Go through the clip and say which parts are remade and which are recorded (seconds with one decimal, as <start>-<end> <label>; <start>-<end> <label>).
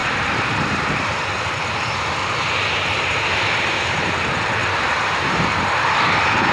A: 0.0-1.2 remade; 1.2-2.2 recorded; 2.2-4.1 remade; 4.1-4.6 recorded; 4.6-5.8 remade; 5.8-6.5 recorded